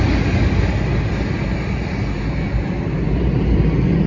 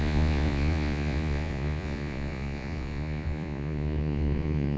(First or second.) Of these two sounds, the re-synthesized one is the second